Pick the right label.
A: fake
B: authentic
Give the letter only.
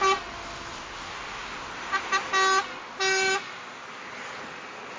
B